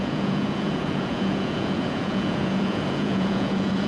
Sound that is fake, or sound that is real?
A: fake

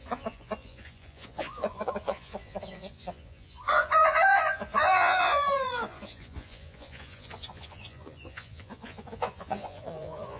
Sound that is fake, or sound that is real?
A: fake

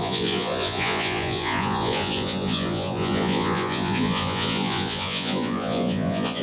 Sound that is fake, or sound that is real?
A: fake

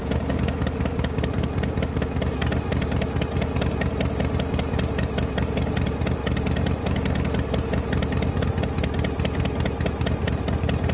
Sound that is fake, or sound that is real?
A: real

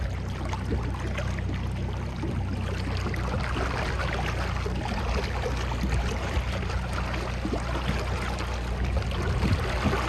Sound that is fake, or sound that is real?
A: real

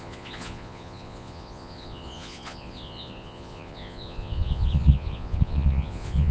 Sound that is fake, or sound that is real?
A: fake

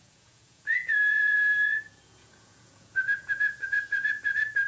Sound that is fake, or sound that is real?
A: fake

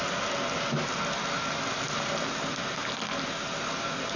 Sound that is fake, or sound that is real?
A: real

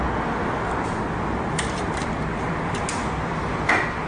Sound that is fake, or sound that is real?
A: real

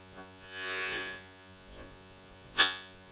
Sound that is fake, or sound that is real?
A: fake